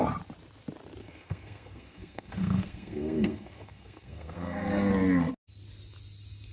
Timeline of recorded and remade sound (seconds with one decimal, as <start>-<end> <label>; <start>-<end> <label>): 0.0-1.0 recorded; 1.0-4.9 remade; 4.9-6.5 recorded